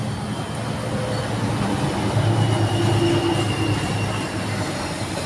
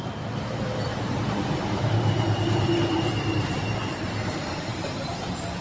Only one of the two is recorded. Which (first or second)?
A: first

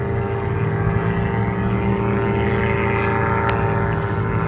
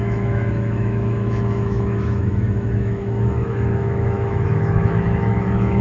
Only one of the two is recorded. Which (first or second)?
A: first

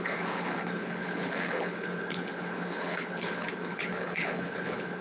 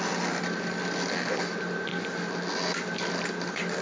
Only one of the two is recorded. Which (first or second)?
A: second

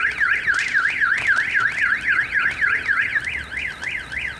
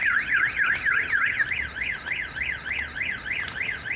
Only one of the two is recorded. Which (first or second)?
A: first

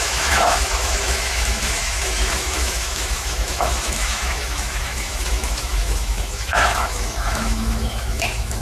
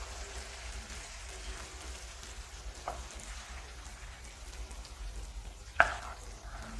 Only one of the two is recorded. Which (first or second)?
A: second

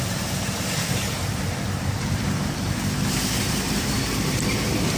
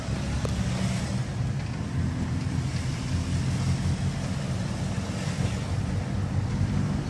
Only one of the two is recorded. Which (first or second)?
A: second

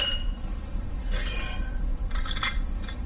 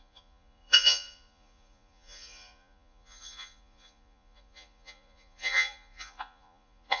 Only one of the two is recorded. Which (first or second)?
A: first